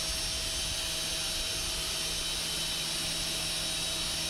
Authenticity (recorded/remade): recorded